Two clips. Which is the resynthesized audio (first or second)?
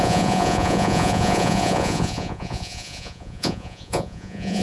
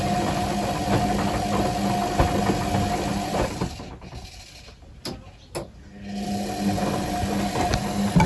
first